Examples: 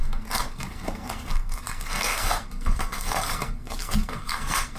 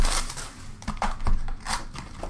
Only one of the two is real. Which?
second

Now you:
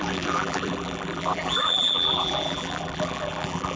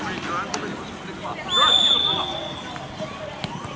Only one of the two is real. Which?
second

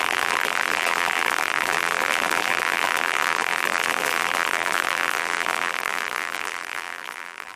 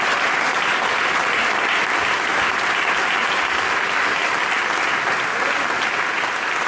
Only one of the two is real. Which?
second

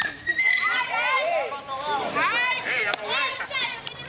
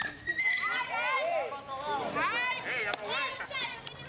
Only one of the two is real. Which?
second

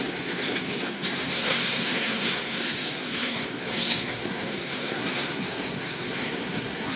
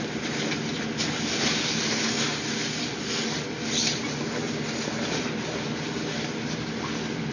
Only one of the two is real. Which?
second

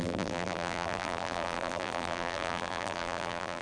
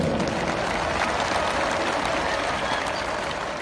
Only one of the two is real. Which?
second